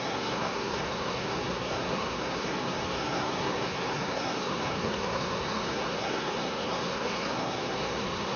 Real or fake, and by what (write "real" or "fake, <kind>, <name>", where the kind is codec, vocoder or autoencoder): fake, codec, SNAC